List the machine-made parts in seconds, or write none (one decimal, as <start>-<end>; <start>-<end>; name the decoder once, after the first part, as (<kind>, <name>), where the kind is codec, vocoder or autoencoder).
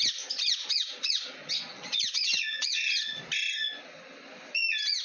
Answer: 0.6-3.2 (vocoder, Vocos)